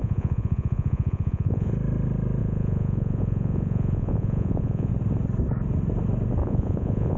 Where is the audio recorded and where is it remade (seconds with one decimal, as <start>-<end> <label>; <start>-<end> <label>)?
0.0-1.7 remade; 1.7-2.4 recorded; 2.4-4.9 remade; 4.9-6.4 recorded; 6.4-7.2 remade